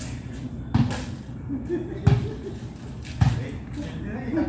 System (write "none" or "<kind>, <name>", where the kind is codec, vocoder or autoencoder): none